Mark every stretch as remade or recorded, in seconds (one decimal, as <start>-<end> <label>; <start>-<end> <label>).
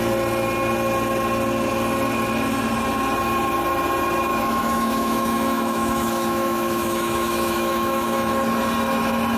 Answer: 0.0-4.3 recorded; 4.3-8.3 remade; 8.3-9.4 recorded